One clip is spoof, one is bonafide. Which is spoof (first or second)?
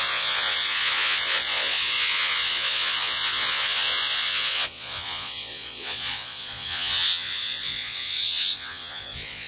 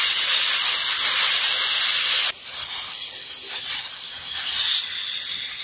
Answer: first